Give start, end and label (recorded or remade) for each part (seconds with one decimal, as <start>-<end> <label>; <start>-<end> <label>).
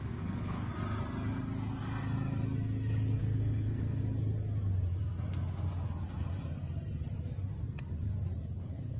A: 0.0-0.7 remade; 0.7-3.2 recorded; 3.2-4.0 remade; 4.0-8.6 recorded; 8.6-9.0 remade